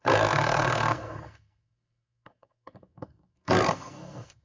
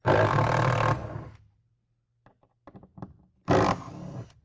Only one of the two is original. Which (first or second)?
second